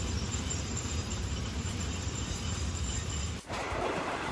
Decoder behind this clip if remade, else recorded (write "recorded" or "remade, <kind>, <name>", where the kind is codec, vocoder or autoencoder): remade, vocoder, BigVGAN v2